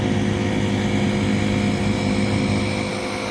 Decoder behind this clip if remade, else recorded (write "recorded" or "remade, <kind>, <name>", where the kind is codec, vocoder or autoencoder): recorded